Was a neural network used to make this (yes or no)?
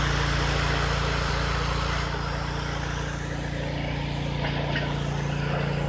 no